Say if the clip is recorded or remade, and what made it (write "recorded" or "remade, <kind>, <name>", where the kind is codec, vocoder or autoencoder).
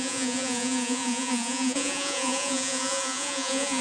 remade, vocoder, Vocos